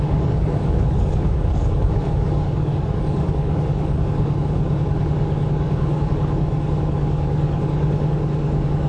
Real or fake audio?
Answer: fake